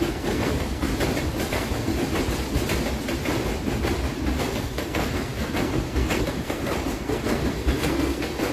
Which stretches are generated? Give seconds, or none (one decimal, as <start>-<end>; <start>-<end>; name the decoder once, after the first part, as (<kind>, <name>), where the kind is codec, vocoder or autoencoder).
0.0-0.9 (codec, SNAC); 1.5-1.9; 4.4-8.5